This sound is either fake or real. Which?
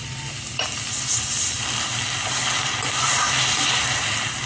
real